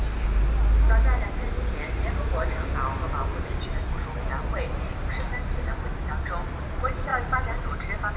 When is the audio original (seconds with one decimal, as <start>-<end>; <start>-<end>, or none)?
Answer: 0.0-8.2